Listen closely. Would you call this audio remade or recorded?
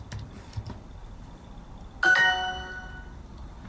recorded